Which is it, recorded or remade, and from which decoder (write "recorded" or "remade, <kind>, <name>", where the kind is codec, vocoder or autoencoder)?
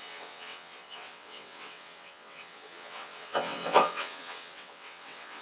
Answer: remade, vocoder, WaveNeXt